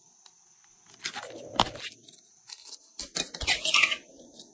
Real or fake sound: real